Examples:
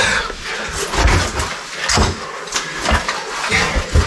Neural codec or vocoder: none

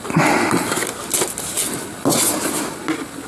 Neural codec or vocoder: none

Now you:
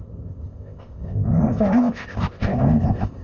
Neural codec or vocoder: codec, ZipCodec